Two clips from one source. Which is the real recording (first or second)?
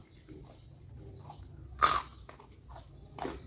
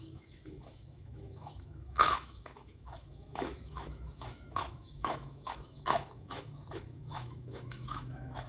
first